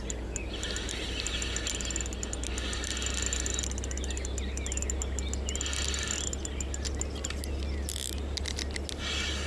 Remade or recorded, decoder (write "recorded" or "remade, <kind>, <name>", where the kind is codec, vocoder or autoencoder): recorded